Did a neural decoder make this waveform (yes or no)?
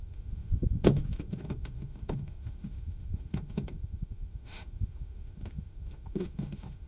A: yes